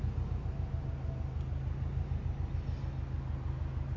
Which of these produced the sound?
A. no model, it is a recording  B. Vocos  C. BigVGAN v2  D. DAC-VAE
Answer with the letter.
A